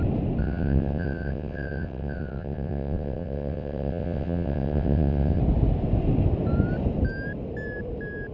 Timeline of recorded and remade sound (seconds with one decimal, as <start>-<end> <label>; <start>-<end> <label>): 0.0-0.4 recorded; 0.4-5.4 remade; 5.4-8.3 recorded